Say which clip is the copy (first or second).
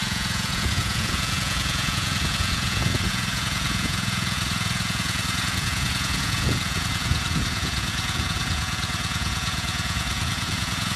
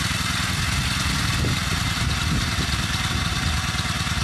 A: first